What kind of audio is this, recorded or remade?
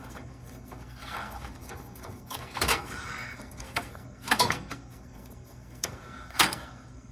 remade